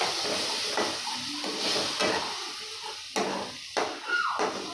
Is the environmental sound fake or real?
real